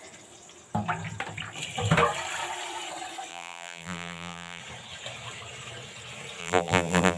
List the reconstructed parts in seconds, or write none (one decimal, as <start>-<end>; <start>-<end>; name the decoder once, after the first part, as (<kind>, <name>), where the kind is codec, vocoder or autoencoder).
3.3-4.6 (vocoder, BigVGAN v2); 6.4-7.2